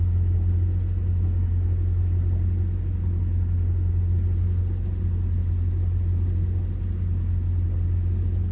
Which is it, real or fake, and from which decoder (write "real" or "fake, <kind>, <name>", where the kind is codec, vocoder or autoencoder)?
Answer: real